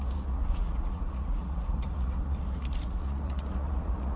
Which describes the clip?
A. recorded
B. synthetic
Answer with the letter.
B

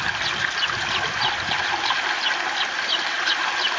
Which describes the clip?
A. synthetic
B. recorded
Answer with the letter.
B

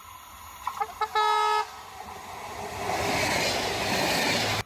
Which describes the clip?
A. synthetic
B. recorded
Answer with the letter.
B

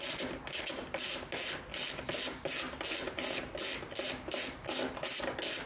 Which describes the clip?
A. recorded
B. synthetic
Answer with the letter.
A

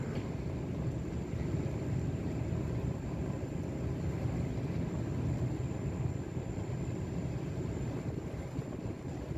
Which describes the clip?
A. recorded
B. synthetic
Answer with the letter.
A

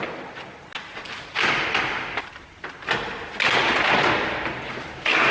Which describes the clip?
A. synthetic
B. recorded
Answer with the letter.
B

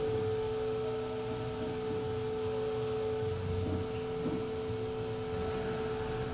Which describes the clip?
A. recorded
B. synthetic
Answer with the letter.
A